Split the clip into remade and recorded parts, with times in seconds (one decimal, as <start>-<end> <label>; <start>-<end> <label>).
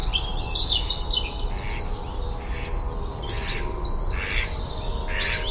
0.0-5.5 recorded